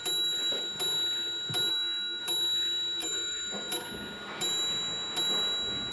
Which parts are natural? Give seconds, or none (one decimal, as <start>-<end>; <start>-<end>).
0.0-1.7; 2.2-3.0; 3.7-5.9